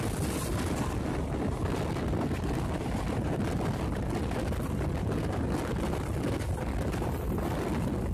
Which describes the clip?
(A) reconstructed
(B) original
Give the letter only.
B